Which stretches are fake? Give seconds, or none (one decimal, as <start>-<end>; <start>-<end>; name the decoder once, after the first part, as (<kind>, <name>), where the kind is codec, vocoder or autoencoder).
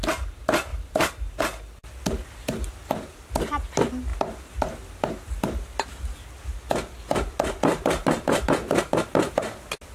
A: 0.7-1.4 (vocoder, BigVGAN v2); 7.7-8.8